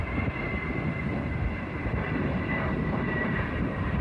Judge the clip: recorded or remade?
remade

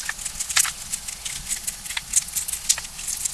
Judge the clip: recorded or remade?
recorded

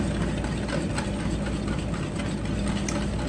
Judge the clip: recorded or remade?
remade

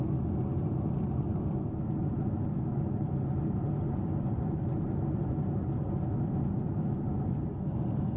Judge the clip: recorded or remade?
recorded